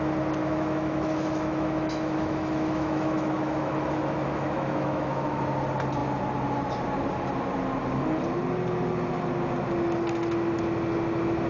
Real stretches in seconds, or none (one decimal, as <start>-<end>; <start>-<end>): 0.0-0.4; 5.4-11.5